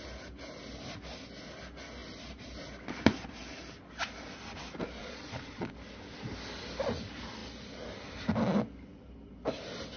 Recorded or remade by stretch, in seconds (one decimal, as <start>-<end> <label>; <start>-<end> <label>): 0.0-5.0 recorded; 5.0-5.7 remade; 5.7-10.0 recorded